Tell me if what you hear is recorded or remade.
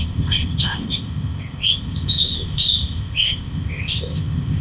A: remade